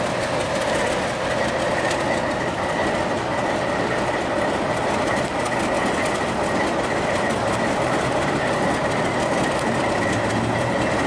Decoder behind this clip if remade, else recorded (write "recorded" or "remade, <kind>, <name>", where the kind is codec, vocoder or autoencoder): recorded